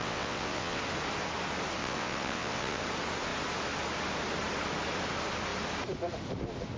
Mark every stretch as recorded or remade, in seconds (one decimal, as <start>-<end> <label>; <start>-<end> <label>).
0.0-0.8 remade; 0.8-1.8 recorded; 1.8-2.8 remade; 2.8-6.8 recorded